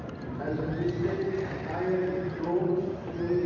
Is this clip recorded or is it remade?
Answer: recorded